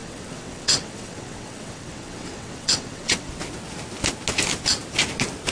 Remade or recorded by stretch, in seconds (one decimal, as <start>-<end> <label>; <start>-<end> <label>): 0.0-3.3 remade; 3.3-5.5 recorded